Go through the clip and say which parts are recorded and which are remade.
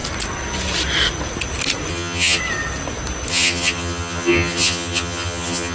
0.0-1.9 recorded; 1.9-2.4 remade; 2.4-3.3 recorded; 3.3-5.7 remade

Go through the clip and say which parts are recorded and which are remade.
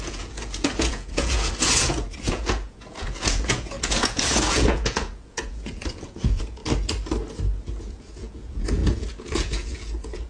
0.0-6.6 remade; 6.6-7.8 recorded; 7.8-10.3 remade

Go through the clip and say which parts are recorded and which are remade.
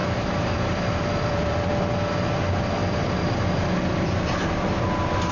0.0-1.7 remade; 1.7-5.3 recorded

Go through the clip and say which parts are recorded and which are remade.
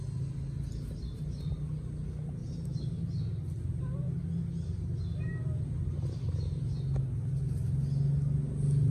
0.0-8.9 recorded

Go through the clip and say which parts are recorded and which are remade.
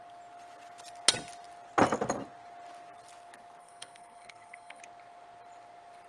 0.0-3.6 recorded; 3.6-4.8 remade; 4.8-6.1 recorded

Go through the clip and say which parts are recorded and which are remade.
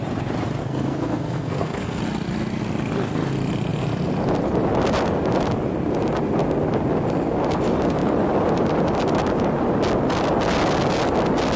0.0-0.6 recorded; 0.6-2.0 remade; 2.0-11.6 recorded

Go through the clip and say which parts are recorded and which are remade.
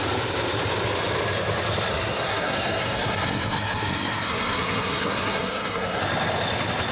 0.0-1.9 recorded; 1.9-6.0 remade; 6.0-6.9 recorded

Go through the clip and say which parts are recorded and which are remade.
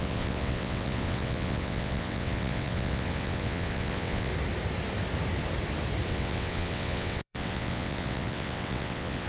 0.0-4.3 remade; 4.3-6.1 recorded; 6.1-9.3 remade